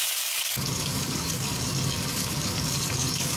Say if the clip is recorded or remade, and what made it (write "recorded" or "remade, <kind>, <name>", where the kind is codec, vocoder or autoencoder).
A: remade, codec, DAC